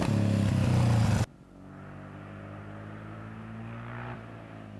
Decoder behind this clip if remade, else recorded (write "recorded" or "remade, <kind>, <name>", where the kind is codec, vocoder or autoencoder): recorded